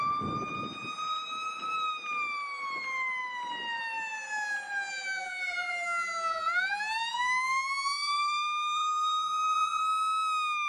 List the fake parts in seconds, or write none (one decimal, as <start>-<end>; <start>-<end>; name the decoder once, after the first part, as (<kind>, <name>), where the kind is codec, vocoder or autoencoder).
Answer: 4.9-9.8 (vocoder, BigVGAN v2)